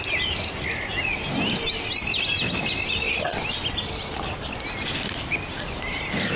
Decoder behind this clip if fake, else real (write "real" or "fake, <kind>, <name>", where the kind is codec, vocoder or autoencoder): real